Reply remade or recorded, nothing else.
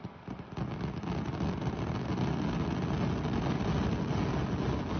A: recorded